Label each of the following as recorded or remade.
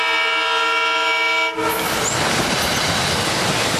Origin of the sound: recorded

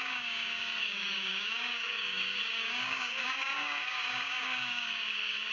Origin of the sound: remade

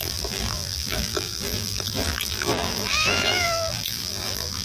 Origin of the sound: remade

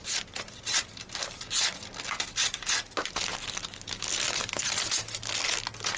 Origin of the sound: recorded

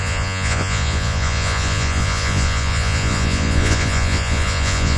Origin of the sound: remade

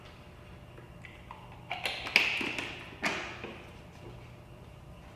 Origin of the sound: recorded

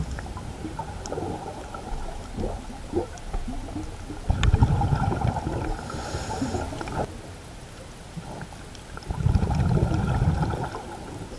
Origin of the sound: recorded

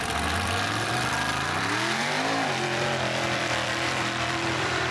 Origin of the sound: remade